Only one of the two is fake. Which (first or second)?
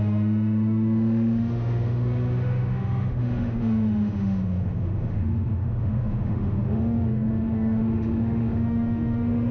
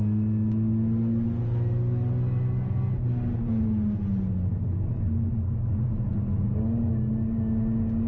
first